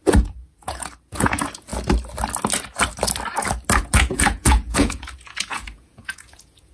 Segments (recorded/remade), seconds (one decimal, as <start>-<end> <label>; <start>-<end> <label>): 0.0-1.7 remade; 1.7-3.8 recorded; 3.8-6.7 remade